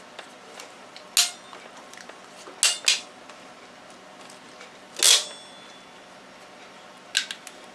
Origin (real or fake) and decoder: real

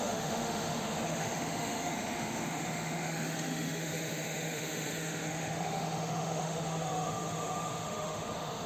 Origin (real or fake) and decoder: fake, autoencoder, DAC-VAE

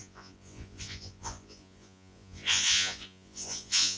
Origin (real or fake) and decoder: fake, vocoder, Vocos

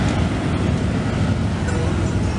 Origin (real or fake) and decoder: real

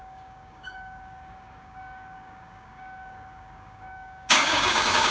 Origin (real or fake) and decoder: fake, codec, DAC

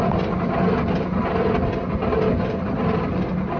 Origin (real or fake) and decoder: real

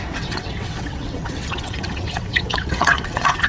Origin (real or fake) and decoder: fake, vocoder, WaveNeXt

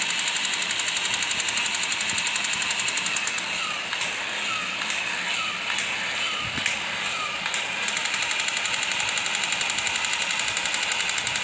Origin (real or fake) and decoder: real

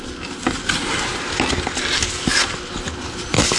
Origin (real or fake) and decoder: real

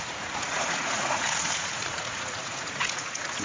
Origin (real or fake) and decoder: fake, vocoder, Vocos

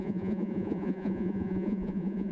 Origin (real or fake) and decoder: fake, vocoder, Vocos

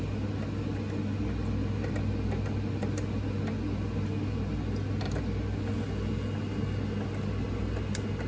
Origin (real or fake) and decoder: real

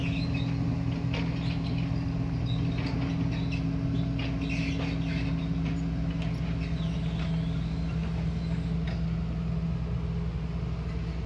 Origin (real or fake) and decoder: real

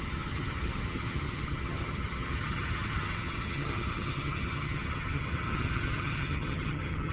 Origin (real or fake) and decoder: fake, vocoder, HiFi-GAN